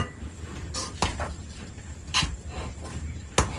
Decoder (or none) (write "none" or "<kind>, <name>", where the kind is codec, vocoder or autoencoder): none